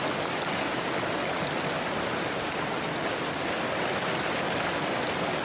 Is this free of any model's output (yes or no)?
yes